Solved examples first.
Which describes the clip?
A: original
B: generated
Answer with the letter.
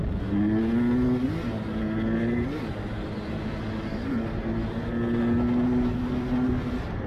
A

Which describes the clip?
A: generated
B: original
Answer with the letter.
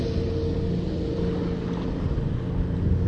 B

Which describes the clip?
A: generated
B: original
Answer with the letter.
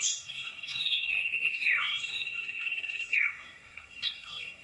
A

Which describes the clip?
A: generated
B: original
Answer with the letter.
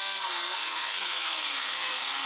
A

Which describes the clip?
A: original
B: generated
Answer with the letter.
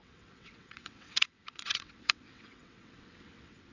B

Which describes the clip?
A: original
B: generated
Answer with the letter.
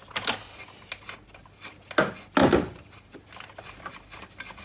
A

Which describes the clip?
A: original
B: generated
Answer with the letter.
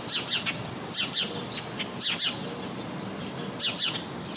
A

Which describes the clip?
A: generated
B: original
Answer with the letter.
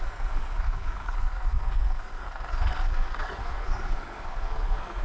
A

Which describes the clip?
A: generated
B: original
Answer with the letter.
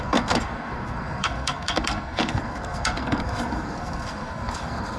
A